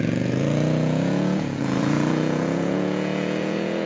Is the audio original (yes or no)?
no